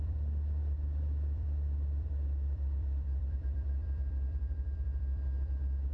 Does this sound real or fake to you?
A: fake